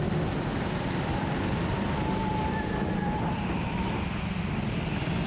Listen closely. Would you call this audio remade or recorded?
recorded